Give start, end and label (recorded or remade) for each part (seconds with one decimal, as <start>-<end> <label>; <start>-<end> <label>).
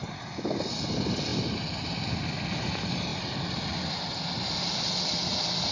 0.0-5.7 recorded